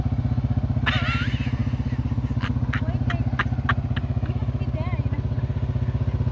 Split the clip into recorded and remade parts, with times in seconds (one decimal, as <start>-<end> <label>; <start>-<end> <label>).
0.0-6.3 recorded